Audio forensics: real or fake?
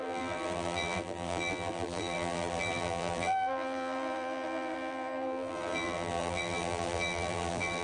fake